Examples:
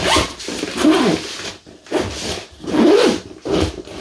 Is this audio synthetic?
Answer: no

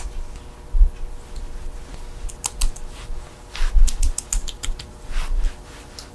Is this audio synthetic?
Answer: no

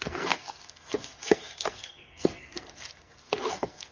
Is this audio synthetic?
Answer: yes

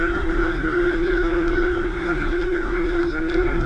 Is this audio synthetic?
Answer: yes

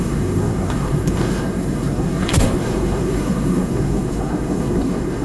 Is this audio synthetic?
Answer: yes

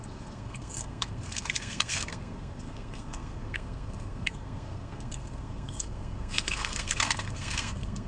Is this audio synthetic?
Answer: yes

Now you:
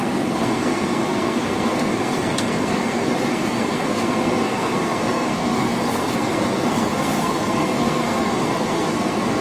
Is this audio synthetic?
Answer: yes